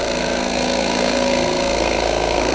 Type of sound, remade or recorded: remade